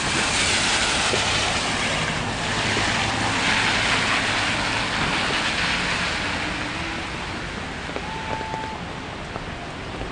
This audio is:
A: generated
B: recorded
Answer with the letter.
B